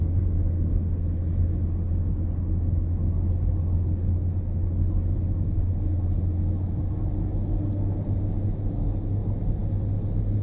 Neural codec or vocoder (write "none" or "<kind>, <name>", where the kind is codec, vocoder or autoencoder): none